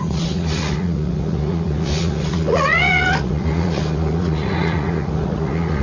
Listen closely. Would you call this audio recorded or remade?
remade